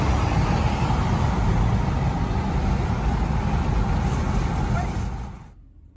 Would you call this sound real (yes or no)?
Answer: yes